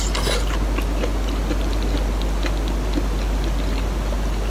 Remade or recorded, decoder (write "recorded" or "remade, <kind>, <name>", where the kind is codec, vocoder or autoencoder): recorded